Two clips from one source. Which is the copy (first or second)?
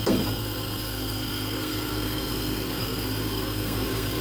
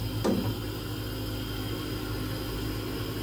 first